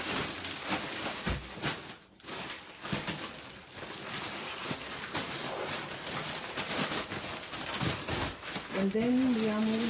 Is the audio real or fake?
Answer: real